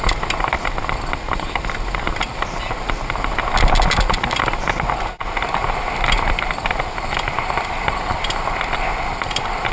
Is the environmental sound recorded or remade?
recorded